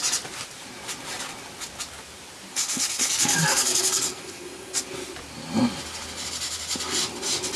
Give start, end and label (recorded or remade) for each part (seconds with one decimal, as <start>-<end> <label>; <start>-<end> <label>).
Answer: 0.0-2.5 recorded; 2.5-4.8 remade; 4.8-7.6 recorded